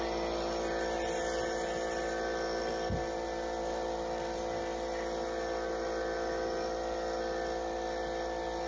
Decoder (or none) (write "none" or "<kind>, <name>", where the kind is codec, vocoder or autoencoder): none